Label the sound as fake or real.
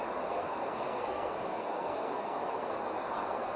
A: fake